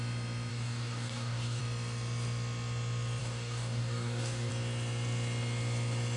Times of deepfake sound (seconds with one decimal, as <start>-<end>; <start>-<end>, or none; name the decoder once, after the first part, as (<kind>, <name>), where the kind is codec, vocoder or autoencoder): 0.5-1.6 (codec, DAC); 3.2-4.5